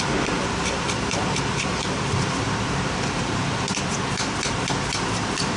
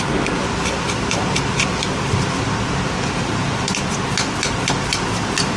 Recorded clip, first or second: second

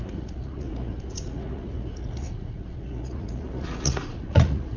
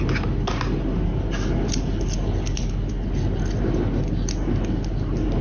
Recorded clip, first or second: second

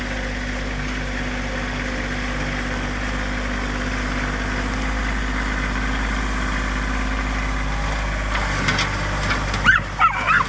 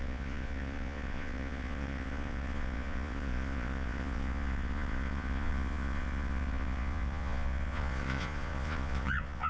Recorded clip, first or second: first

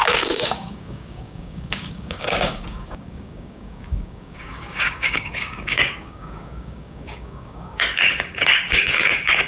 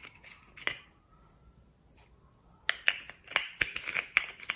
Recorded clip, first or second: second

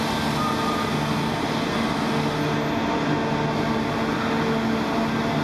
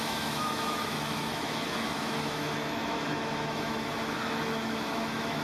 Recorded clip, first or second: first